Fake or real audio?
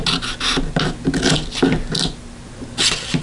real